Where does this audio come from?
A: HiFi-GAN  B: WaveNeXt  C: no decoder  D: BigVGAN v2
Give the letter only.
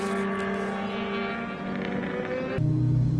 C